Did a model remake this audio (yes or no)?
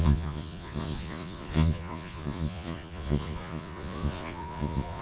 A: yes